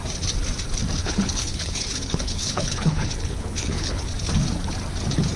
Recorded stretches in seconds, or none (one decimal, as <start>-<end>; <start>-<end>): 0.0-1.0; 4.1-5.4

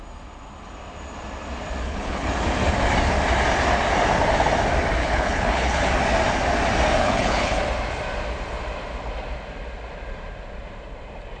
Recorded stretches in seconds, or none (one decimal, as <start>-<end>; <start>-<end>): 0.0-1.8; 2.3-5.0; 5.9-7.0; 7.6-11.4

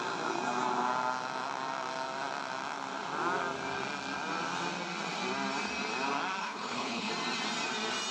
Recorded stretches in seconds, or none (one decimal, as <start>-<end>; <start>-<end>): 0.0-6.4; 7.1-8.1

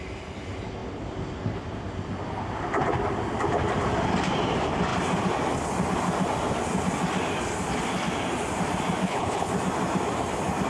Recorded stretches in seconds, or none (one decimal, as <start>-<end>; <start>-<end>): 0.0-9.0; 9.5-10.7